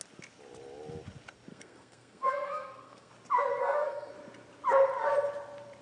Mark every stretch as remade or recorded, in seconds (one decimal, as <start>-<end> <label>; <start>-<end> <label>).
0.0-1.5 recorded; 1.5-3.1 remade; 3.1-3.6 recorded; 3.6-4.1 remade; 4.1-5.8 recorded